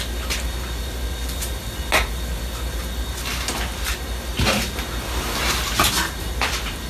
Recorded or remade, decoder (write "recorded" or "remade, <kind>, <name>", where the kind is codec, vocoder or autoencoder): recorded